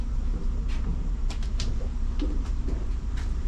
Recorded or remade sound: remade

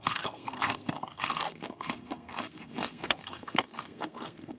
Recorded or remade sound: remade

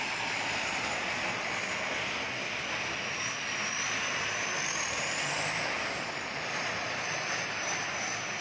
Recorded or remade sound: recorded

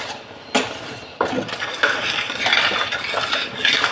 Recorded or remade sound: recorded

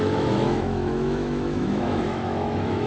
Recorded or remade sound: remade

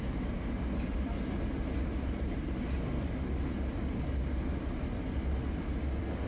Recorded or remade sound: recorded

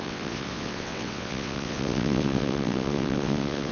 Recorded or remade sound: remade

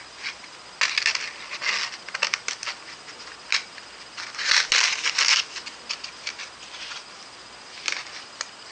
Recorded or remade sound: recorded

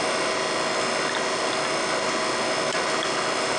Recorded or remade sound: recorded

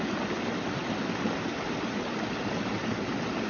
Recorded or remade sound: recorded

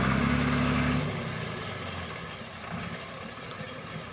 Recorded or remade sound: recorded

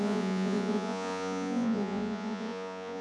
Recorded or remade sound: remade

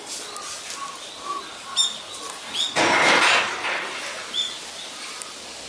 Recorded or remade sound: recorded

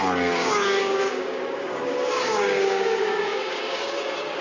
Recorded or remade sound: remade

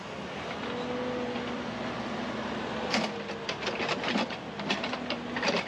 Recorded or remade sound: recorded